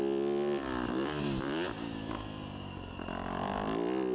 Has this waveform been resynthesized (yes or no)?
no